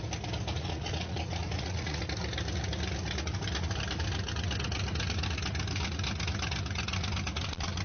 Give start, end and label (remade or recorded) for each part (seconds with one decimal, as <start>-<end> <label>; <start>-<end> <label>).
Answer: 0.0-0.6 recorded; 0.6-2.0 remade; 2.0-7.8 recorded